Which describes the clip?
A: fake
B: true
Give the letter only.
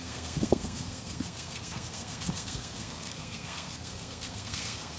A